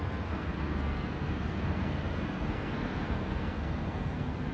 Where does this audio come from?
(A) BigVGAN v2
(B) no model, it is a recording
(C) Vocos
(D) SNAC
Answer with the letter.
D